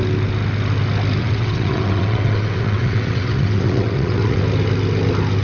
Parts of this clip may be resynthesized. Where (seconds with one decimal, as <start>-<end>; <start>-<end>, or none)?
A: 1.2-4.4